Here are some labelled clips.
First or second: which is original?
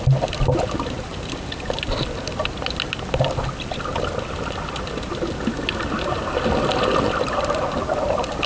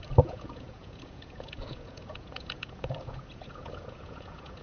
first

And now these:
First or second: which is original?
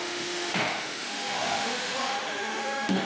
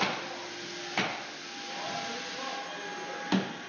second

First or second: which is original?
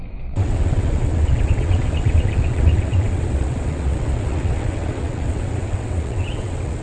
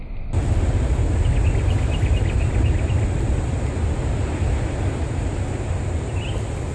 second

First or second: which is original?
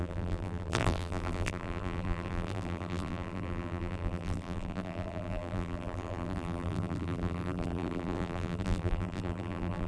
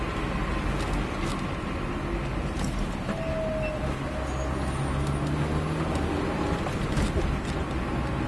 second